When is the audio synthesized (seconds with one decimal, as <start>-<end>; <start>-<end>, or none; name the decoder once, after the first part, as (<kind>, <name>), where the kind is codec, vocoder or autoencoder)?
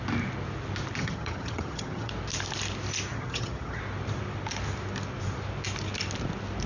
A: 1.0-2.1 (vocoder, HiFi-GAN); 3.1-3.8